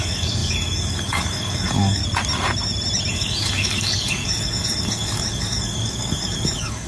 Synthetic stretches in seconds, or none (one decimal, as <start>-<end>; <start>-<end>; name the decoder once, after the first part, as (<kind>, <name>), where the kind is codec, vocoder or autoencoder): 0.0-2.0 (codec, DAC); 3.1-6.9